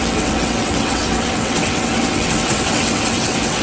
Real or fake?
fake